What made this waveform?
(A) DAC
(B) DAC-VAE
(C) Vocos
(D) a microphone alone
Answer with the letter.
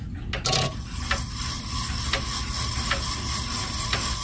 D